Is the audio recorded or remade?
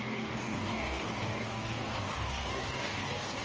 remade